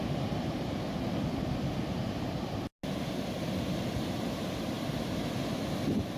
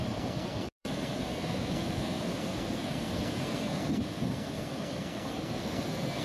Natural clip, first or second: first